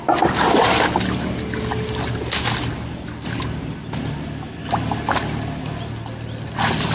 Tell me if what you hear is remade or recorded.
recorded